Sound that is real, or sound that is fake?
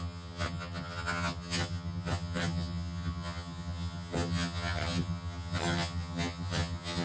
fake